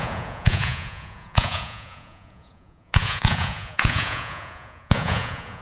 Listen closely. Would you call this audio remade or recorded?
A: remade